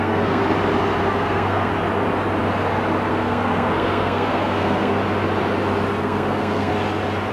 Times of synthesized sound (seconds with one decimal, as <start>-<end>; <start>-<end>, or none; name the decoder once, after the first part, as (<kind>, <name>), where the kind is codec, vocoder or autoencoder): 0.0-0.4 (codec, SNAC); 1.0-1.7; 3.1-5.0; 6.0-6.7